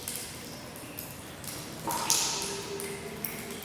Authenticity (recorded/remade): recorded